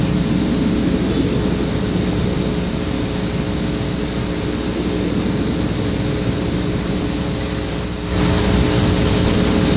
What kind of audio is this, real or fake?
real